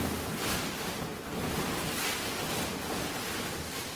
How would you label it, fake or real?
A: real